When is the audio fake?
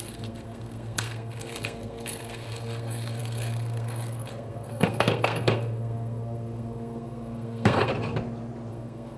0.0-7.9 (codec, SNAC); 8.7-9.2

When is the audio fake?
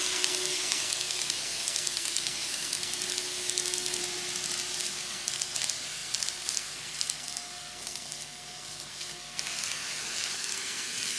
0.0-4.0 (codec, SNAC); 4.8-11.2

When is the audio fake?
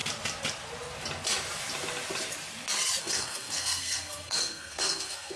3.0-5.4 (codec, SNAC)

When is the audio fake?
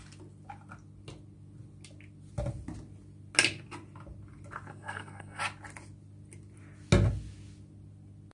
4.7-5.4 (codec, SNAC)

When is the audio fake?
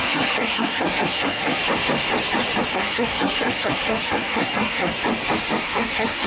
0.0-1.6 (codec, SNAC); 2.7-4.9; 5.6-6.3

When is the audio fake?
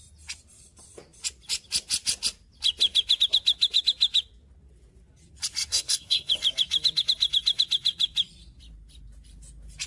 5.7-6.3 (codec, SNAC)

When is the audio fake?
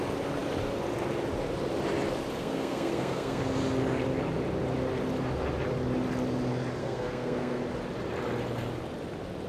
2.4-3.4 (codec, SNAC); 6.8-7.6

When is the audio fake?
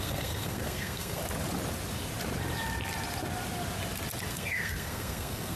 0.0-1.2 (codec, SNAC); 4.3-5.6